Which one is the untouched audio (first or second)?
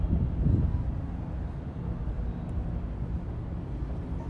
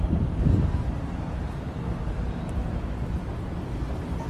first